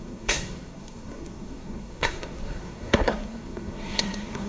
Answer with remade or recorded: remade